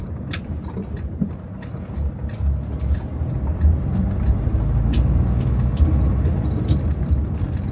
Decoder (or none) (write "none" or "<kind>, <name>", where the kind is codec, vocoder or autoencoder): none